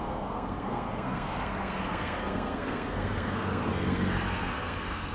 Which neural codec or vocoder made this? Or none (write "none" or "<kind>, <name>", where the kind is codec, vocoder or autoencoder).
codec, SNAC